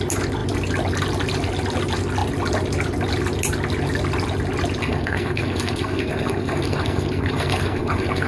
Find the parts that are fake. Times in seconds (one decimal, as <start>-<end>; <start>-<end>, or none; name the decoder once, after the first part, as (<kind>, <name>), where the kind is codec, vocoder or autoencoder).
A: 4.8-8.3 (codec, SNAC)